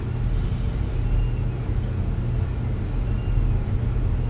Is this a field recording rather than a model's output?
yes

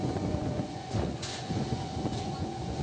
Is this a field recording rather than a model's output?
no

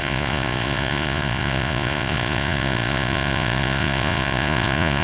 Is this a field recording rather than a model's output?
no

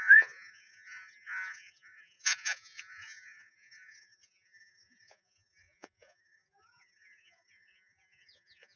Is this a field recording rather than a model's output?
no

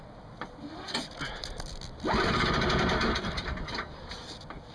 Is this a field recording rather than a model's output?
yes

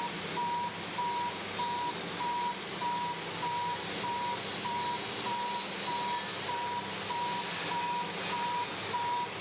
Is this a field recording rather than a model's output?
yes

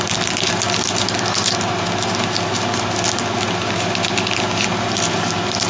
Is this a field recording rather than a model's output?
yes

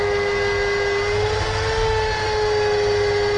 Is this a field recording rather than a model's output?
yes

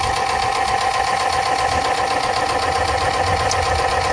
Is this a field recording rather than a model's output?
yes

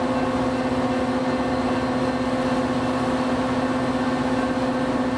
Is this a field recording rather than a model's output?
yes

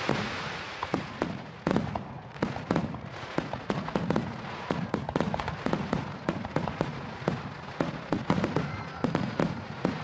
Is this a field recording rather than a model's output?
no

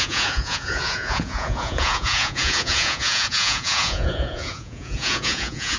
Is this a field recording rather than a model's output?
no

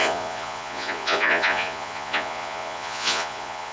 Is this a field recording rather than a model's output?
no